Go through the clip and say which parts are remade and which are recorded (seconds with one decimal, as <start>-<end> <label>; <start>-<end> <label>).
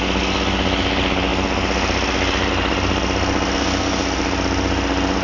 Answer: 0.0-5.2 recorded